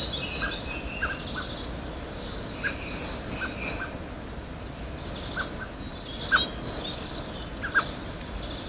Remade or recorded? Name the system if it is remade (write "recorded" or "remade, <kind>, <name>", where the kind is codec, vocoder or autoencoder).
recorded